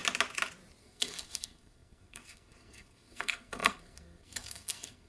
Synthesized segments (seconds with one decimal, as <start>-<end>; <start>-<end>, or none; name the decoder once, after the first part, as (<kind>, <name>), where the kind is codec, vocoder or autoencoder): 0.8-5.1 (codec, SNAC)